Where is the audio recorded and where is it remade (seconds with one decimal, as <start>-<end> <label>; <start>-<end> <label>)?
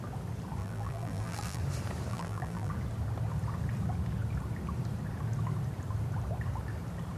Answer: 0.0-0.6 recorded; 0.6-1.6 remade; 1.6-2.1 recorded; 2.1-2.7 remade; 2.7-7.2 recorded